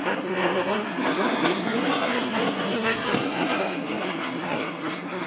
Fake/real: fake